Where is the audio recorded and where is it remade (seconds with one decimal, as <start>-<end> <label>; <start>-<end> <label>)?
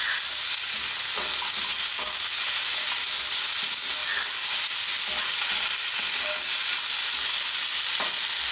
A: 0.0-8.5 recorded